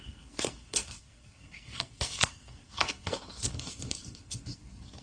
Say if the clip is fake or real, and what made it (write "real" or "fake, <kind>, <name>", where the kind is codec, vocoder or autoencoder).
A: fake, codec, SNAC